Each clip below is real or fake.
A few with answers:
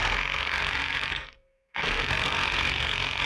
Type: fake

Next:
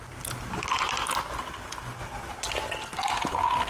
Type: real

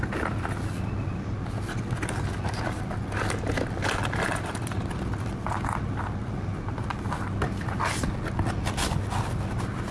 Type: real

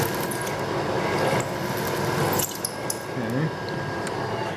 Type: real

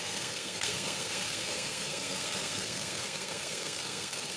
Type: fake